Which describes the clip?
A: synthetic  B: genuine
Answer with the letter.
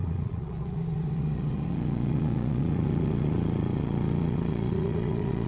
A